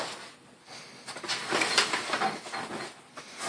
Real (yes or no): yes